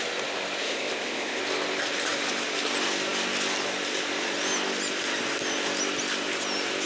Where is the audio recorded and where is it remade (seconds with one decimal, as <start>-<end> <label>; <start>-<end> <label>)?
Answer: 0.0-0.6 recorded; 0.6-1.4 remade; 1.4-6.9 recorded